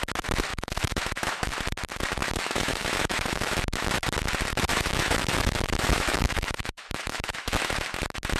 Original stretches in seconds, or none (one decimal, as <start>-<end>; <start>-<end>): 0.0-0.5; 1.5-2.2; 3.9-4.7; 7.7-8.4

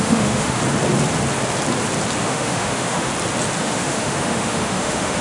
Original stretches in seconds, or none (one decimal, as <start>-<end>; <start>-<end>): 0.6-2.2; 3.1-3.6

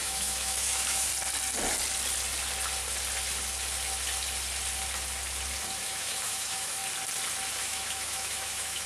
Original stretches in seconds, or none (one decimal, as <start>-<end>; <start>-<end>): 1.1-5.8; 6.8-7.6